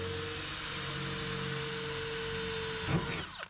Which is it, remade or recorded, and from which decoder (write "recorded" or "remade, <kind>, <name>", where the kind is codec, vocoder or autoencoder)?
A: recorded